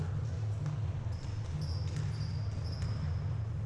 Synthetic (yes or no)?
no